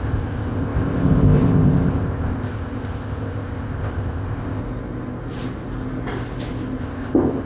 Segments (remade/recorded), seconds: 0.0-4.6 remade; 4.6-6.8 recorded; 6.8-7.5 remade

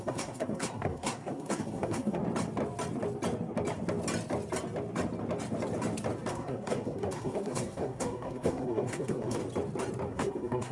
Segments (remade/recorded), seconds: 0.0-2.2 remade; 2.2-6.3 recorded; 6.3-9.4 remade; 9.4-10.1 recorded; 10.1-10.7 remade

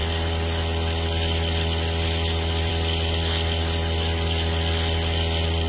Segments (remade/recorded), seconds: 0.0-5.7 recorded

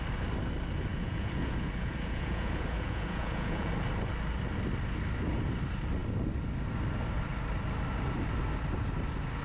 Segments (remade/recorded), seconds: 0.0-0.9 recorded; 0.9-3.7 remade; 3.7-9.4 recorded

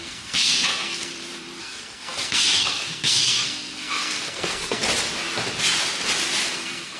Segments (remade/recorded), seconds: 0.0-1.1 remade; 1.1-1.6 recorded; 1.6-4.8 remade; 4.8-6.5 recorded; 6.5-7.0 remade

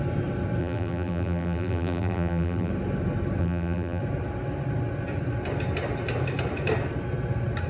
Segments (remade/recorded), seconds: 0.0-0.6 recorded; 0.6-2.7 remade; 2.7-3.4 recorded; 3.4-4.0 remade; 4.0-7.7 recorded

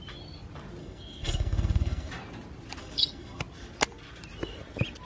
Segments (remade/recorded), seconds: 0.0-0.8 recorded; 0.8-2.1 remade; 2.1-2.8 recorded; 2.8-3.4 remade; 3.4-5.0 recorded